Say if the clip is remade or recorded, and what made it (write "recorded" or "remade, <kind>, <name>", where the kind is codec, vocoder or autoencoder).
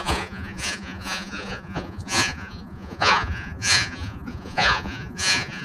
remade, vocoder, Vocos